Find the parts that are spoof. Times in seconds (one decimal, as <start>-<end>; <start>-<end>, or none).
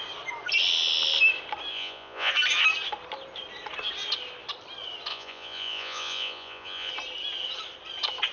1.7-2.3; 5.1-6.9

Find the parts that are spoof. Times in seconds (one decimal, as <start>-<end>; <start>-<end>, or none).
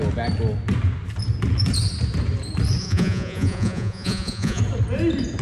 2.8-4.6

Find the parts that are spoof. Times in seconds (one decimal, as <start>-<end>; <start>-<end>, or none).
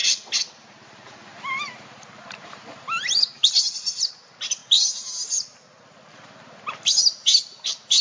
0.0-4.6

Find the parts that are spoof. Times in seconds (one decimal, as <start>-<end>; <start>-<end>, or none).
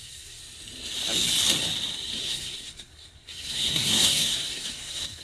0.0-0.4; 2.2-5.2